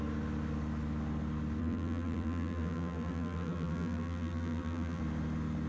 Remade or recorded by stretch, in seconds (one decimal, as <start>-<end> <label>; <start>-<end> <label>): 0.0-1.6 recorded; 1.6-5.0 remade; 5.0-5.7 recorded